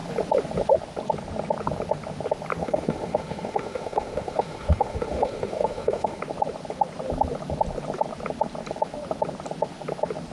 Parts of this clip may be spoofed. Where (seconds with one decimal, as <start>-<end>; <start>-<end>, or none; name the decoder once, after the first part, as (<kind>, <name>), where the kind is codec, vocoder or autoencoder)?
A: 2.6-6.2 (autoencoder, DAC-VAE)